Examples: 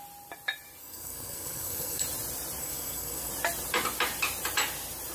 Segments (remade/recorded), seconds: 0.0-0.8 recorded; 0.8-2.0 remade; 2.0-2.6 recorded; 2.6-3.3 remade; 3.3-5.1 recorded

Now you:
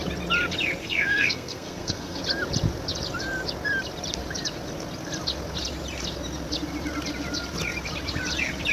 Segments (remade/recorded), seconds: 0.0-0.8 recorded; 0.8-2.2 remade; 2.2-8.7 recorded

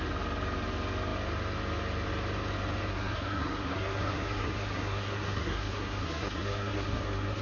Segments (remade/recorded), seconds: 0.0-2.9 recorded; 2.9-7.4 remade

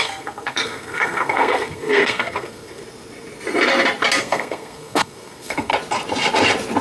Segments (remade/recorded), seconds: 0.0-2.8 remade; 2.8-4.2 recorded; 4.2-5.7 remade; 5.7-6.8 recorded

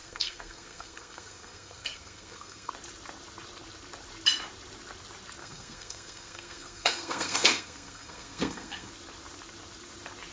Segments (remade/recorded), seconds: 0.0-2.7 remade; 2.7-5.4 recorded; 5.4-8.9 remade; 8.9-10.3 recorded

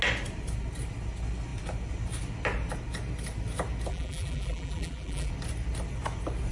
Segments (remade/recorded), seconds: 0.0-3.9 recorded; 3.9-5.3 remade; 5.3-6.5 recorded

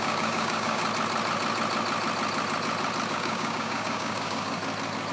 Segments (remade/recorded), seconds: 0.0-0.8 remade; 0.8-3.1 recorded; 3.1-4.6 remade; 4.6-5.1 recorded